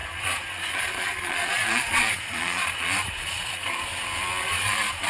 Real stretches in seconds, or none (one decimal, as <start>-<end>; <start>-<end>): 3.9-4.4